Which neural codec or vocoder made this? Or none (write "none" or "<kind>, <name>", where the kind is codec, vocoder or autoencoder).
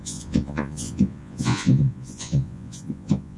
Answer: vocoder, Vocos